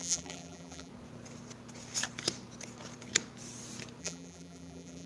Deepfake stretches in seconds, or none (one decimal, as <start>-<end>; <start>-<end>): 0.0-0.9; 4.0-5.1